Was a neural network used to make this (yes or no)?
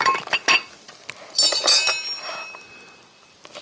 no